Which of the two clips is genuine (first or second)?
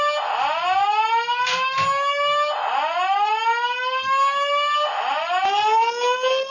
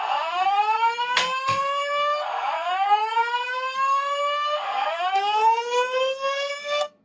first